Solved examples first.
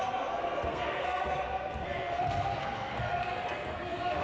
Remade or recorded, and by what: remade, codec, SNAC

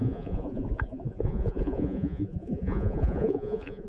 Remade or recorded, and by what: remade, vocoder, Vocos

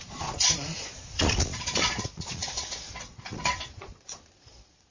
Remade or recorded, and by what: remade, vocoder, Vocos